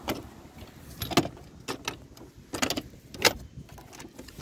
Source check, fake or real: real